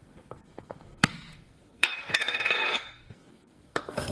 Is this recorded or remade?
remade